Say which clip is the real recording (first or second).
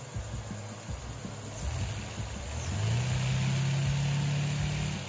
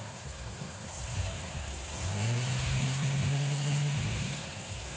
first